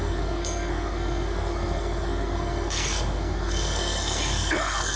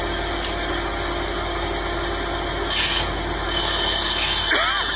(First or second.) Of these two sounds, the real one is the second